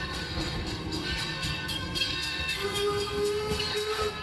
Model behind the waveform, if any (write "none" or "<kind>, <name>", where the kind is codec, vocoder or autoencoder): codec, SNAC